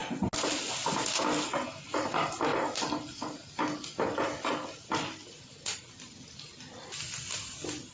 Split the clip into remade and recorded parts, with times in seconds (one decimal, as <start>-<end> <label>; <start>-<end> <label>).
0.0-7.9 recorded